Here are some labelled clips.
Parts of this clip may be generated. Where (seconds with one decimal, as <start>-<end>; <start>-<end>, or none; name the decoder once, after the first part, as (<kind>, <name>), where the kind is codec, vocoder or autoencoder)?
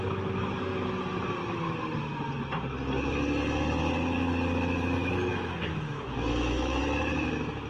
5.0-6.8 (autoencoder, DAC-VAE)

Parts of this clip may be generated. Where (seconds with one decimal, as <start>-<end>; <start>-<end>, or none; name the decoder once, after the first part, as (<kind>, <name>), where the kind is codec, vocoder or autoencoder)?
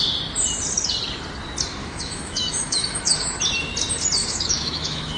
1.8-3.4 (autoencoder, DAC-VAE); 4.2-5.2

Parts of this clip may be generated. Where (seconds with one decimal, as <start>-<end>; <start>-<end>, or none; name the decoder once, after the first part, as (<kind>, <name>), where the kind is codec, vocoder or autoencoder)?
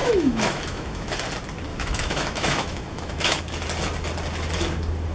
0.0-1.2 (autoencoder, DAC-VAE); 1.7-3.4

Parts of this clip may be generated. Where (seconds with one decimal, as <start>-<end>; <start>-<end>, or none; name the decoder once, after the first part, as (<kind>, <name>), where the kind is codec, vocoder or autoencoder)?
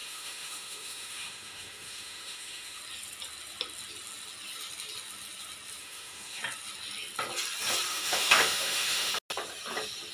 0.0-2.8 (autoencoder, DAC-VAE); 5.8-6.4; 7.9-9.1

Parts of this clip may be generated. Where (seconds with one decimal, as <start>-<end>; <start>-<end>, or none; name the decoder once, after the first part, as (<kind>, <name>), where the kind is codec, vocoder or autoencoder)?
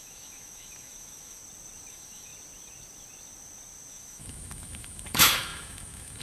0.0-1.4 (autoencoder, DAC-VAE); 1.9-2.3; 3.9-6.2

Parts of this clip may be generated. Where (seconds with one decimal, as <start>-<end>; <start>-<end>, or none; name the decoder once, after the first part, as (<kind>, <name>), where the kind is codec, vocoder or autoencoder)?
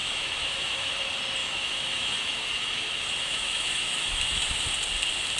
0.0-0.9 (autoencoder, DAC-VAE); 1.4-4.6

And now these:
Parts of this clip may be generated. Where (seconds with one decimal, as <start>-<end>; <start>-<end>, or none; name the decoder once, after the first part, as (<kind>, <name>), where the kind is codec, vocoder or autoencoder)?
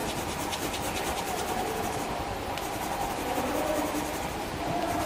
none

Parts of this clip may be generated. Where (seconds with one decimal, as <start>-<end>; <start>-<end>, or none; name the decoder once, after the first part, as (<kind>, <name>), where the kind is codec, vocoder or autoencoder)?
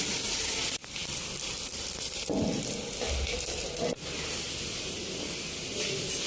none